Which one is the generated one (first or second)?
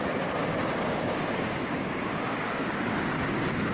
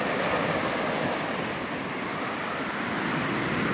first